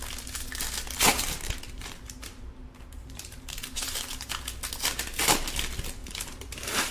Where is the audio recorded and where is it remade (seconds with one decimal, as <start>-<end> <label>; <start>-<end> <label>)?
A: 0.0-1.1 recorded; 1.1-4.3 remade; 4.3-6.0 recorded; 6.0-6.9 remade